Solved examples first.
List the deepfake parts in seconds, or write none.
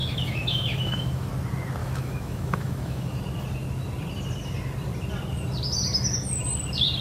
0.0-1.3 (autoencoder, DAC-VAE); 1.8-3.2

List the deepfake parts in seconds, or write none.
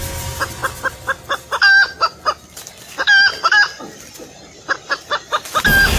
none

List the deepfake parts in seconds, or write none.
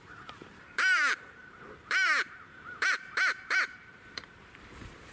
0.0-5.1 (vocoder, BigVGAN v2)